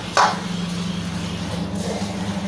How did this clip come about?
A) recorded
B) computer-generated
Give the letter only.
A